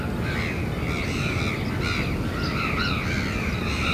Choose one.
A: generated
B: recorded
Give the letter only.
B